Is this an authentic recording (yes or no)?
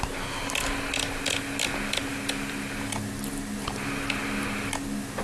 yes